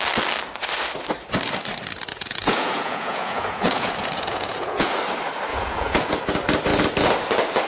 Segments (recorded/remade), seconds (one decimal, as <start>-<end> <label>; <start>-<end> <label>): 0.0-2.1 recorded; 2.1-4.9 remade; 4.9-5.5 recorded; 5.5-6.1 remade; 6.1-7.7 recorded